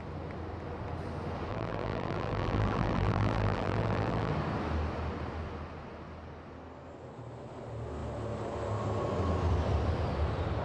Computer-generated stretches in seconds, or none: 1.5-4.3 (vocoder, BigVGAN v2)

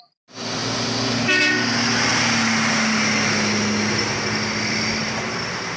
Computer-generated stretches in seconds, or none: none

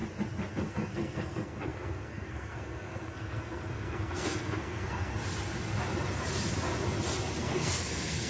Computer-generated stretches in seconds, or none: 0.5-5.1 (codec, SNAC); 7.4-8.3

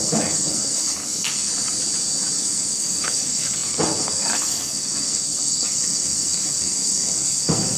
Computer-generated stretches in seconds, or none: 0.0-1.5 (codec, SNAC); 2.4-7.8

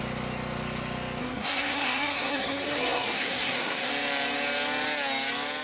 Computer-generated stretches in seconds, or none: 1.2-3.9 (codec, SNAC)

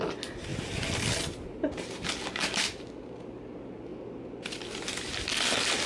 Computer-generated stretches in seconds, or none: none

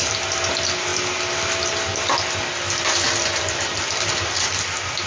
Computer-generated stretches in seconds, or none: none